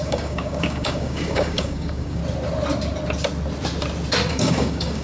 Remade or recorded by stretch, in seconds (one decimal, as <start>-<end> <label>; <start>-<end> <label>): 0.0-2.2 remade; 2.2-4.3 recorded; 4.3-5.0 remade